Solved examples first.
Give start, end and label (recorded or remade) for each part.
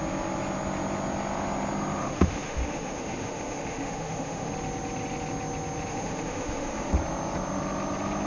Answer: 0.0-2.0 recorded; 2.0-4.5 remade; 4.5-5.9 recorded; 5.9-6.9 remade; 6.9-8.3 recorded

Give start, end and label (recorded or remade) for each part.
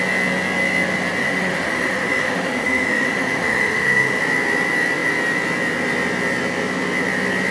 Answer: 0.0-1.2 recorded; 1.2-4.2 remade; 4.2-7.5 recorded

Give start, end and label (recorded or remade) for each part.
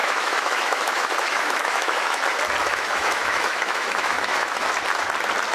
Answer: 0.0-2.2 remade; 2.2-2.6 recorded; 2.6-4.7 remade; 4.7-5.5 recorded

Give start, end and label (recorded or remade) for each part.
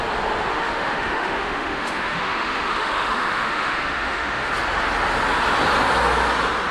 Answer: 0.0-0.5 recorded; 0.5-4.5 remade; 4.5-6.7 recorded